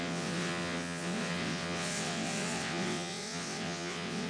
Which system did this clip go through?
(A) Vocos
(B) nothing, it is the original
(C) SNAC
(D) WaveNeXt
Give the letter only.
D